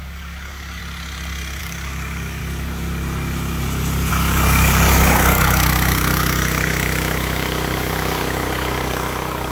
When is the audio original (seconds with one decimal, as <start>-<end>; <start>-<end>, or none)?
0.8-1.6; 2.4-4.1